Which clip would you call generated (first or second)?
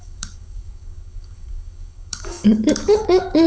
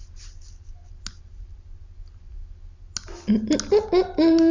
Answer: first